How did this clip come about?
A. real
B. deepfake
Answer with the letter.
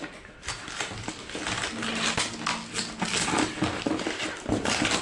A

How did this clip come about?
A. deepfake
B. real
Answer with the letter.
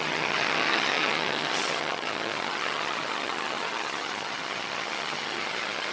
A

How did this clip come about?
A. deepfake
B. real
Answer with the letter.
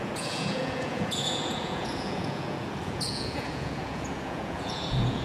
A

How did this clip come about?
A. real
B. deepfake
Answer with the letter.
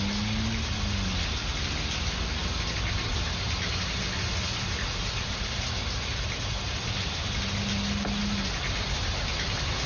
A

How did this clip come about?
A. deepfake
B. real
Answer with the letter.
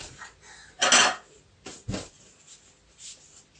B